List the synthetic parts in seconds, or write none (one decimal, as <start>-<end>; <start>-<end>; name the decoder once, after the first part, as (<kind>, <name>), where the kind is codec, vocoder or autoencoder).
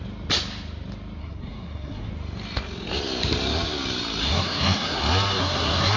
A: 1.2-2.1 (codec, SNAC); 4.2-5.0; 5.4-6.0